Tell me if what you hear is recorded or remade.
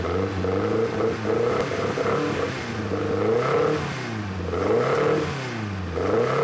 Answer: recorded